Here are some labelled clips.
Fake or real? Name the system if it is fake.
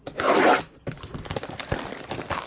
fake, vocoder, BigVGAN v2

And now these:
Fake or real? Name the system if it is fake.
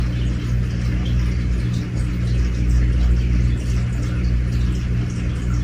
real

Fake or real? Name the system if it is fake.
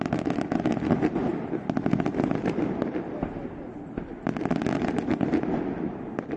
fake, vocoder, BigVGAN v2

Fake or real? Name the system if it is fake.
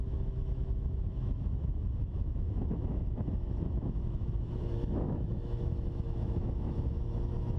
fake, autoencoder, DAC-VAE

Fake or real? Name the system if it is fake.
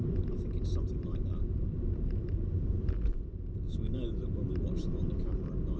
fake, vocoder, BigVGAN v2